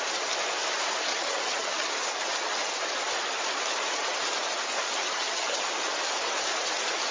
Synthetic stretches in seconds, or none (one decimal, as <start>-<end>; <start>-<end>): 1.1-1.9; 5.0-5.6